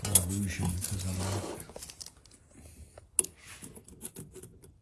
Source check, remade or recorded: recorded